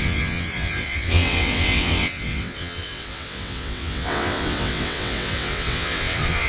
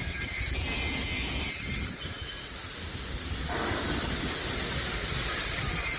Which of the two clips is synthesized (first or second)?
first